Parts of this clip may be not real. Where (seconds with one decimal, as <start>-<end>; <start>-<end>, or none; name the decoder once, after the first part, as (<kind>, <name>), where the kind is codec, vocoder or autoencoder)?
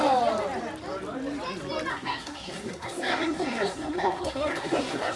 1.9-5.2 (codec, SNAC)